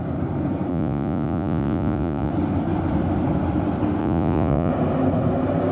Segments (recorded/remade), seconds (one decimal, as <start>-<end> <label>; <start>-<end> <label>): 0.0-0.7 recorded; 0.7-2.3 remade; 2.3-4.0 recorded; 4.0-4.7 remade; 4.7-5.7 recorded